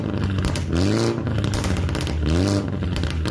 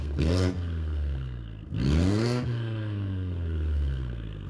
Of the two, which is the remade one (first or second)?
second